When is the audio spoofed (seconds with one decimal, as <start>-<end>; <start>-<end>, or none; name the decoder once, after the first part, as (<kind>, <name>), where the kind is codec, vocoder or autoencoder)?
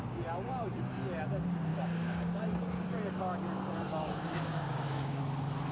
1.7-2.4 (codec, DAC); 3.9-5.2